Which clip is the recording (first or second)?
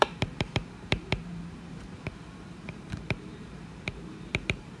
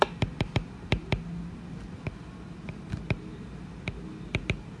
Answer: second